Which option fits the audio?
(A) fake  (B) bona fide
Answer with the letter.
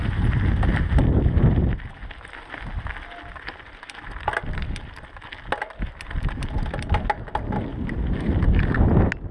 B